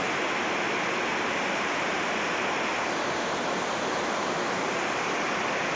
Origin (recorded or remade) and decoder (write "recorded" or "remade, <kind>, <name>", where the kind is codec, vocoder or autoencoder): recorded